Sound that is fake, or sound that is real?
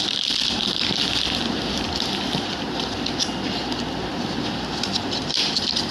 real